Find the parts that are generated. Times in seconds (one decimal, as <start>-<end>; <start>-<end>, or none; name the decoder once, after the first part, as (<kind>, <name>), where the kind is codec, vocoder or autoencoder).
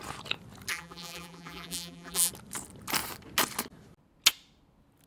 0.7-2.3 (vocoder, BigVGAN v2)